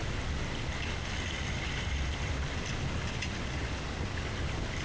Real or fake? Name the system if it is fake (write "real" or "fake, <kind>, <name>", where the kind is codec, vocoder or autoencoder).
real